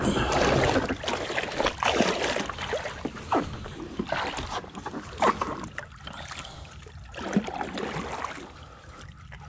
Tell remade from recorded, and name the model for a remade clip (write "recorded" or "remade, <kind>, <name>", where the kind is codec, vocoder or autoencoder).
recorded